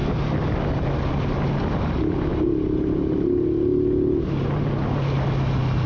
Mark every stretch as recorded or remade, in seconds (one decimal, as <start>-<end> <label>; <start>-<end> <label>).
0.0-5.9 recorded